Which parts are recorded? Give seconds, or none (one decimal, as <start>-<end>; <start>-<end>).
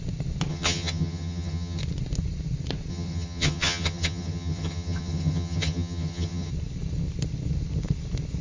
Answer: 0.0-0.5; 1.8-2.9; 6.5-8.4